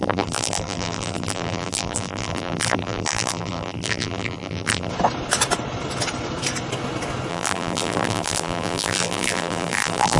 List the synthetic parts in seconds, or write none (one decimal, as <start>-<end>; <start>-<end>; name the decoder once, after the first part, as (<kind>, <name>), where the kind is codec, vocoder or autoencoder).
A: 0.0-4.9 (vocoder, BigVGAN v2); 7.3-10.2

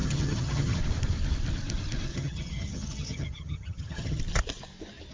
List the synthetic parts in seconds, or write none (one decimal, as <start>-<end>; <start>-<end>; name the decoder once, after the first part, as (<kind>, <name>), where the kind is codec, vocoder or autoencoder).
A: 0.0-0.8 (vocoder, HiFi-GAN); 2.1-4.2

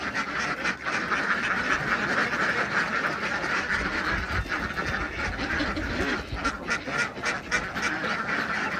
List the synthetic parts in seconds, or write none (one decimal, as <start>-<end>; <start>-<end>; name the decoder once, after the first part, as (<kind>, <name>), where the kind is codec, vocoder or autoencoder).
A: none

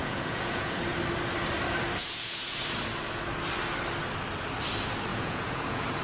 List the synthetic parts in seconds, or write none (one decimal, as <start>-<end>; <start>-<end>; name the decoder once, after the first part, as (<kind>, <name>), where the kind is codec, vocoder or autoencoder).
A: 0.0-0.8 (vocoder, Vocos); 2.0-2.6; 5.1-6.0